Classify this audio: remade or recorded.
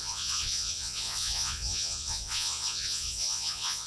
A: remade